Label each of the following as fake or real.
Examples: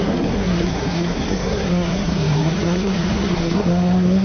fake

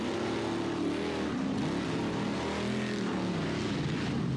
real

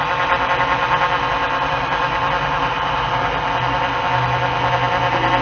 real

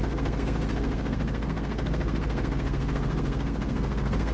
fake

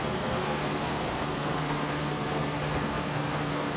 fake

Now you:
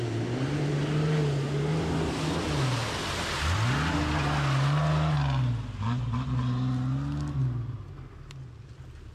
real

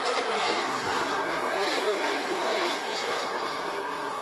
fake